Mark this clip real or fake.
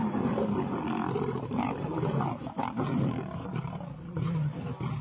real